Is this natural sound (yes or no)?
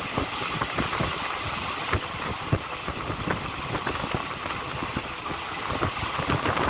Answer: yes